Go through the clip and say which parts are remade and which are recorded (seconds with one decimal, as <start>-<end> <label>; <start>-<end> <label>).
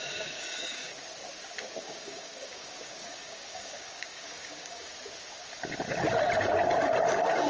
0.0-0.9 remade; 0.9-1.8 recorded; 1.8-4.9 remade; 4.9-7.5 recorded